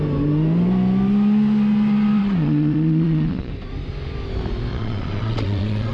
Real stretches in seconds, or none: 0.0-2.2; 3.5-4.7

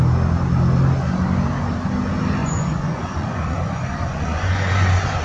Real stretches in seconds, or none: 0.0-2.4